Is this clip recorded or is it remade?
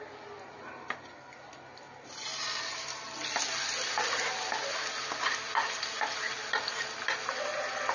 recorded